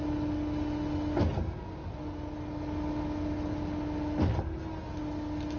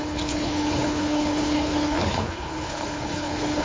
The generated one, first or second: second